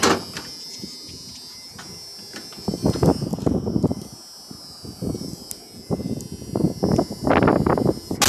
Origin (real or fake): real